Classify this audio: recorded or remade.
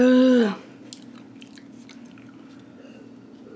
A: recorded